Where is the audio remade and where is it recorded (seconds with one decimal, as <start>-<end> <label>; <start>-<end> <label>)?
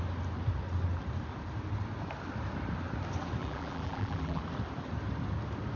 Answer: 0.0-3.4 recorded; 3.4-4.4 remade; 4.4-5.8 recorded